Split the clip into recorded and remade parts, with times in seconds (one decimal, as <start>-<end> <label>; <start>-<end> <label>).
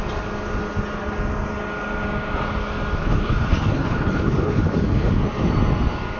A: 0.0-3.0 recorded; 3.0-5.1 remade; 5.1-6.2 recorded